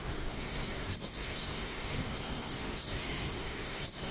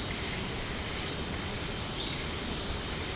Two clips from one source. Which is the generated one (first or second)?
first